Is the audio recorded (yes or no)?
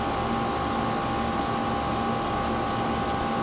yes